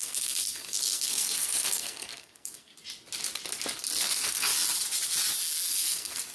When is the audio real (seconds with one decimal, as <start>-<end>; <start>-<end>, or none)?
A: 2.7-4.0; 4.5-5.7